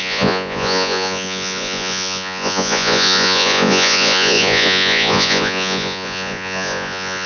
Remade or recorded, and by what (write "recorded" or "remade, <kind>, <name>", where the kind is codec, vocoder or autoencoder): remade, vocoder, Vocos